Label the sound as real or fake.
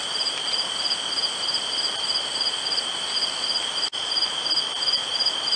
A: real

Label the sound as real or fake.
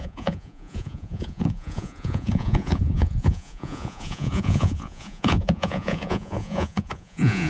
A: fake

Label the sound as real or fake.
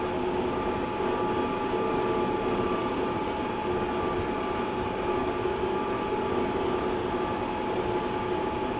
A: real